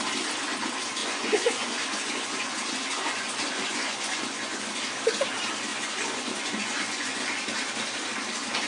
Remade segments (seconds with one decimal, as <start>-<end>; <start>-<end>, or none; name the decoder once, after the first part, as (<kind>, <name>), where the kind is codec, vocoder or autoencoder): 1.0-2.5 (vocoder, Vocos); 2.9-4.7; 5.7-7.4